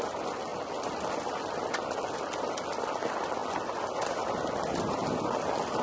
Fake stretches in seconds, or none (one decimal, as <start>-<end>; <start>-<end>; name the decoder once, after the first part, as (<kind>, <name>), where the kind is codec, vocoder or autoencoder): none